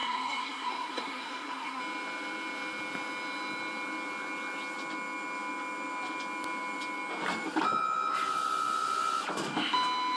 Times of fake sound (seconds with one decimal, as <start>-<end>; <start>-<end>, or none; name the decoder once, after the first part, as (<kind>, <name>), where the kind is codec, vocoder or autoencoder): 0.0-1.8 (codec, SNAC)